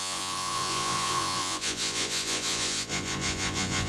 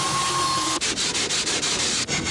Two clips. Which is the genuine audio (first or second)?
second